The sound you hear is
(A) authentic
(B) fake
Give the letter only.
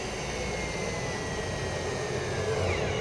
A